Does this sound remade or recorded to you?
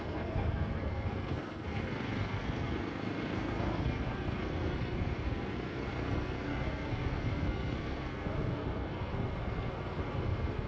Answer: remade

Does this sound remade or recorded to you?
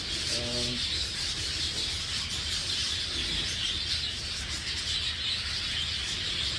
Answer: recorded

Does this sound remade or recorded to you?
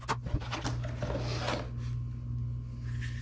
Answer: recorded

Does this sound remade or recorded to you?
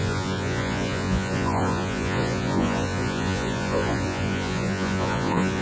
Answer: remade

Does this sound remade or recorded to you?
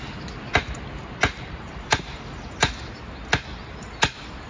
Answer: recorded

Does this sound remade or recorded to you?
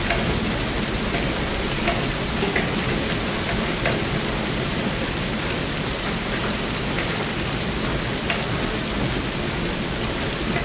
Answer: recorded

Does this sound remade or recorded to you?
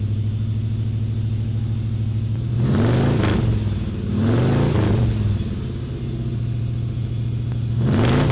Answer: recorded